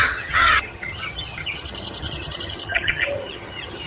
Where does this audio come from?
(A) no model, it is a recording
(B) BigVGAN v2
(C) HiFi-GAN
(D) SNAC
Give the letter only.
C